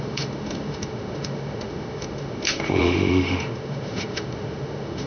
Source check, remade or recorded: remade